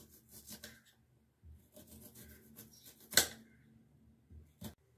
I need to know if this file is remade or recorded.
recorded